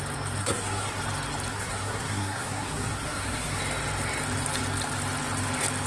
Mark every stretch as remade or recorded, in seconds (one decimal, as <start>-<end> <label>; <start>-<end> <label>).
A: 0.0-0.4 recorded; 0.4-1.0 remade; 1.0-1.5 recorded; 1.5-3.6 remade; 3.6-5.9 recorded